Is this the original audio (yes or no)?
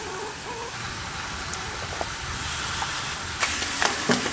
yes